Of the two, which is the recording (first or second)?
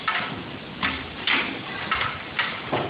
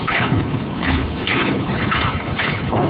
first